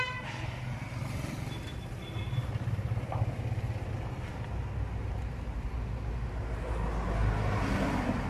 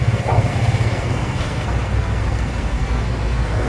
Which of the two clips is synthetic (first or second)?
second